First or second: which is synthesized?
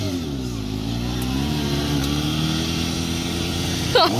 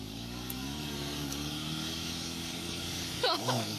second